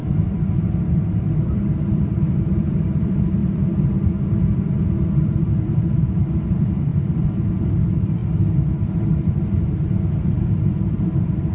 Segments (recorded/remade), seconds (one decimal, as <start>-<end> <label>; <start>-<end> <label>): 0.0-11.5 remade